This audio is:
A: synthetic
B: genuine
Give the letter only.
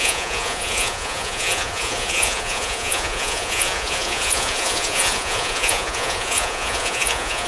A